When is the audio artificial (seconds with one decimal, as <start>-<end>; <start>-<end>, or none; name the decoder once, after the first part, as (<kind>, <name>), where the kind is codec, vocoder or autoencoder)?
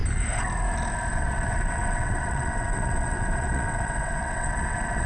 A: 1.1-5.1 (vocoder, WaveNeXt)